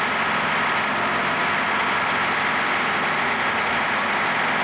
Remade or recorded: recorded